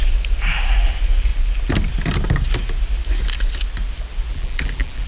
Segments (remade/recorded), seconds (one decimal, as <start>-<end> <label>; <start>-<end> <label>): 0.0-4.3 recorded; 4.3-5.1 remade